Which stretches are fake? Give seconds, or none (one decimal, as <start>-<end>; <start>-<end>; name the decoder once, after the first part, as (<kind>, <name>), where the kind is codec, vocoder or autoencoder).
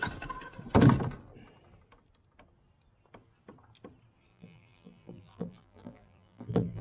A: 4.3-6.8 (vocoder, BigVGAN v2)